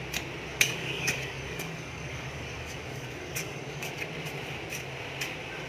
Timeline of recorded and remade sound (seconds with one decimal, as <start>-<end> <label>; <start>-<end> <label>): 0.0-0.5 recorded; 0.5-3.9 remade; 3.9-5.7 recorded